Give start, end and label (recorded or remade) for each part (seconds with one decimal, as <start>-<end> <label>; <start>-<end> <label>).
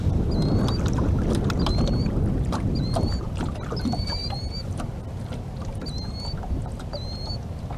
0.0-4.2 recorded; 4.2-4.8 remade; 4.8-7.8 recorded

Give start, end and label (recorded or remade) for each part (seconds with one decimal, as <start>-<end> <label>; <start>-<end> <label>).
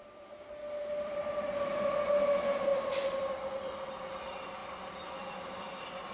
0.0-0.8 recorded; 0.8-1.3 remade; 1.3-2.7 recorded; 2.7-4.1 remade; 4.1-6.1 recorded